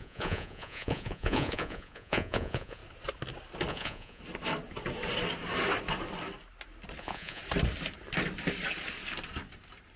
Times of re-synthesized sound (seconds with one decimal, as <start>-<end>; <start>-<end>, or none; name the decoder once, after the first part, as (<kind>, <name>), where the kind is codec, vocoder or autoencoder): 0.0-2.8 (vocoder, Vocos); 3.7-4.2; 7.0-7.4